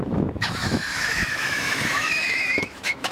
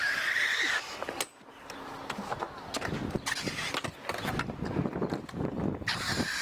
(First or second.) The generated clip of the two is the first